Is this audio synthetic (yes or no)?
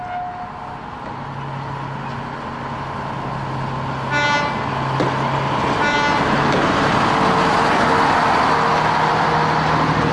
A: no